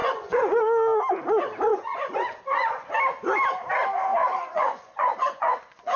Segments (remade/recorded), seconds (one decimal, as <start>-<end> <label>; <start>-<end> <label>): 0.0-0.6 remade; 0.6-1.7 recorded; 1.7-2.9 remade; 2.9-4.1 recorded; 4.1-6.0 remade